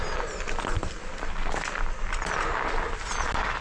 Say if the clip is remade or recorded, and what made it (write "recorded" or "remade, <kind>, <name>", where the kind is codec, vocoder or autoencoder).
recorded